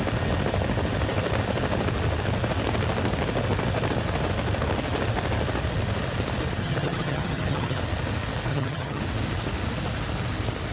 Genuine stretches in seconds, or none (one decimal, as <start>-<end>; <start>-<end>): 0.0-6.6; 7.8-8.5; 9.0-10.7